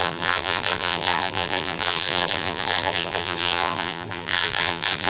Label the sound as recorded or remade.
remade